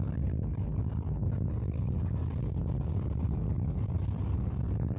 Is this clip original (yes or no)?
yes